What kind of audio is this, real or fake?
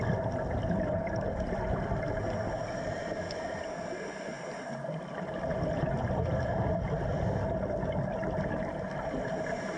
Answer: real